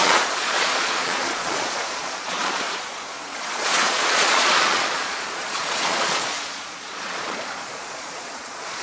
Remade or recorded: remade